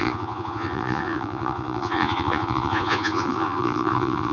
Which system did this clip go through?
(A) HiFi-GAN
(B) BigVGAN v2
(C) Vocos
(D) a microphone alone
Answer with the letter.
C